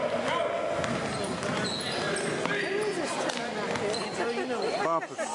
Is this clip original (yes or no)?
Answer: yes